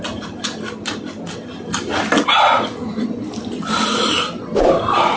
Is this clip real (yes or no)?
yes